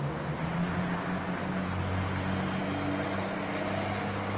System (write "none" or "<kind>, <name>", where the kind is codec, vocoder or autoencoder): none